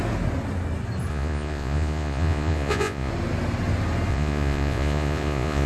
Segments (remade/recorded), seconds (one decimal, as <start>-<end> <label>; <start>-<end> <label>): 0.0-1.1 recorded; 1.1-3.1 remade; 3.1-4.1 recorded; 4.1-5.7 remade